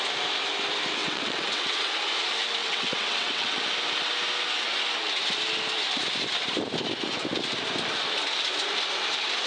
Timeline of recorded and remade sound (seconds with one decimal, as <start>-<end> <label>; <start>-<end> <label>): 0.0-1.0 recorded; 1.0-1.9 remade; 1.9-2.6 recorded; 2.6-3.6 remade; 3.6-9.5 recorded